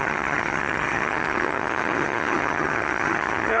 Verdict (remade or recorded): remade